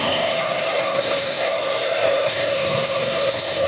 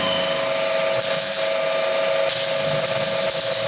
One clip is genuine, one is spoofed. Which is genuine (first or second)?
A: second